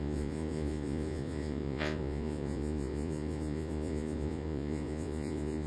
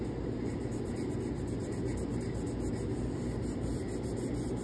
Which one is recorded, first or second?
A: second